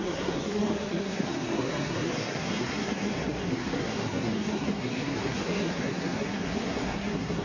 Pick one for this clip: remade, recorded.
remade